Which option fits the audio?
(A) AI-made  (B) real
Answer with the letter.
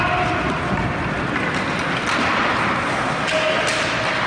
B